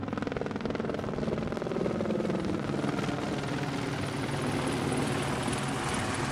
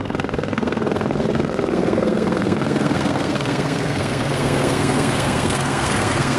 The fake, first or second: second